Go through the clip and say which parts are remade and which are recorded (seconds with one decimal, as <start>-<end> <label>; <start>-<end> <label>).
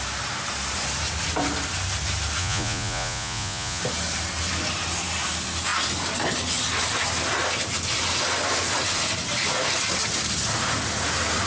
0.0-2.4 recorded; 2.4-3.8 remade; 3.8-11.5 recorded